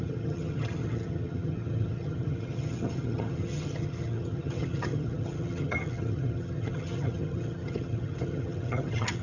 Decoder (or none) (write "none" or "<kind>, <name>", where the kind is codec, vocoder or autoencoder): vocoder, HiFi-GAN